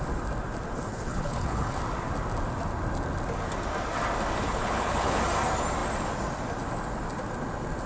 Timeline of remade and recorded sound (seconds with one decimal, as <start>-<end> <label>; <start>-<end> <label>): 0.0-0.9 recorded; 0.9-1.8 remade; 1.8-4.5 recorded; 4.5-5.2 remade; 5.2-7.9 recorded